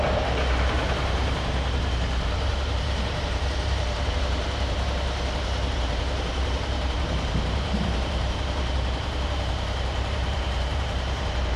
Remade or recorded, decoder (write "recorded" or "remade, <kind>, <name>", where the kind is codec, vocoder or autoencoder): remade, vocoder, BigVGAN v2